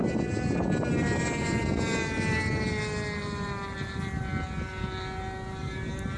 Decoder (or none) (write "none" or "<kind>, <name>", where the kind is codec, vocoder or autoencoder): none